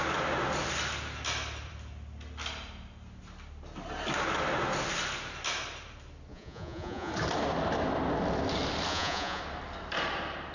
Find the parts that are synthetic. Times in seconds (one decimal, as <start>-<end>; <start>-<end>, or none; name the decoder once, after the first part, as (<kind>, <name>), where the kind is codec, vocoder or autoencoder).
6.3-7.1 (vocoder, Vocos); 8.9-9.4